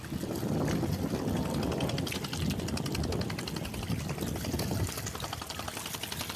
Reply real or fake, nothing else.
real